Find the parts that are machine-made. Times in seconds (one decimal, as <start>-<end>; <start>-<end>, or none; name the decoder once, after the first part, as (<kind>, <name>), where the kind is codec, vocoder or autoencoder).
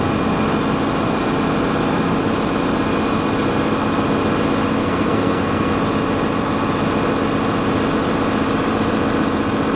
4.8-5.7 (codec, SNAC)